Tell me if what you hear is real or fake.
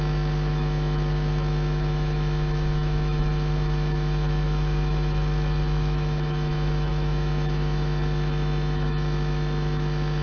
fake